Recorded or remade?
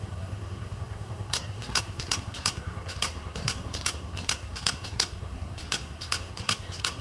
remade